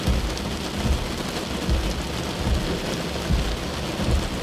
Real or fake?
real